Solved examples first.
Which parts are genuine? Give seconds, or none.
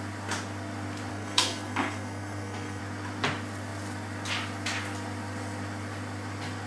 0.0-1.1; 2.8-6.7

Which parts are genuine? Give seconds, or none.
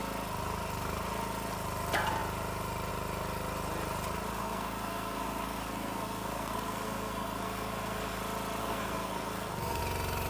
0.0-4.3; 8.2-8.6; 9.8-10.3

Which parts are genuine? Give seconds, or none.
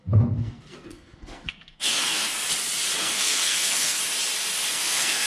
2.3-3.0; 4.0-4.7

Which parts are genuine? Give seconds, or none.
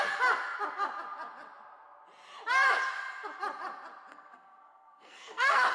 0.0-4.1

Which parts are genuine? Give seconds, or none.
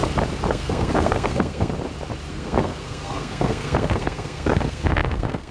0.0-0.5; 1.7-2.3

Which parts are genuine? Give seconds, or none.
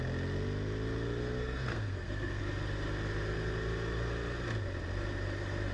0.0-1.4; 2.4-5.7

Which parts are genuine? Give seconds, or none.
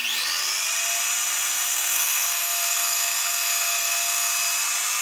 0.0-1.7; 4.3-5.0